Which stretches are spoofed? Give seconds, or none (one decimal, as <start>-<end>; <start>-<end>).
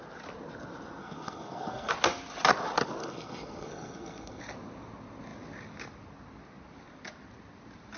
1.0-1.9; 3.0-4.4